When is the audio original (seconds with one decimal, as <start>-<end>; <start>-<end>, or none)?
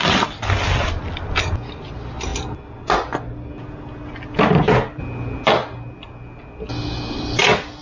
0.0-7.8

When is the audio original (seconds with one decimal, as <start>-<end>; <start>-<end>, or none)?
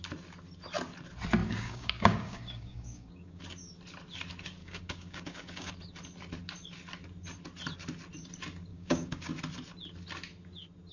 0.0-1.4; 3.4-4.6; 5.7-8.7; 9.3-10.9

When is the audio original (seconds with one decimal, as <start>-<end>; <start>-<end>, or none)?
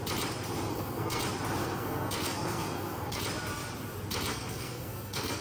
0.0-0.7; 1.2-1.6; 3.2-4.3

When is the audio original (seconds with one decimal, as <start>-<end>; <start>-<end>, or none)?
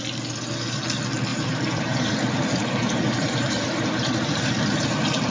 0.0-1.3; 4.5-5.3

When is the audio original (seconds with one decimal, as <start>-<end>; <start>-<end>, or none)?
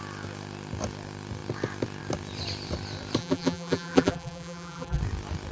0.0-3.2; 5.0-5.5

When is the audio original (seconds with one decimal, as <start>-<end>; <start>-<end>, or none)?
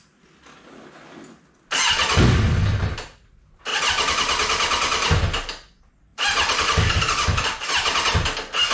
0.0-3.7; 5.2-6.1; 7.6-8.7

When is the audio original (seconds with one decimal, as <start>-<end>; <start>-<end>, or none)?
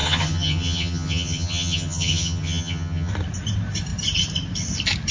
3.1-5.1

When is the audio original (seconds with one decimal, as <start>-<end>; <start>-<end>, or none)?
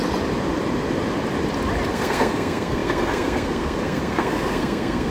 0.0-1.9